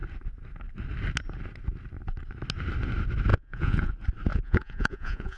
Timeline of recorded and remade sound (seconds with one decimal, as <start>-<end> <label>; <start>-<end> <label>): 0.0-3.3 recorded; 3.3-3.9 remade; 3.9-4.3 recorded; 4.3-5.4 remade